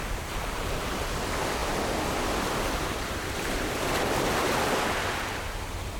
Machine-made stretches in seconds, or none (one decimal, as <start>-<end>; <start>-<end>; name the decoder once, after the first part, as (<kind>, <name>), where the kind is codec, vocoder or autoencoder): 1.6-4.9 (vocoder, BigVGAN v2)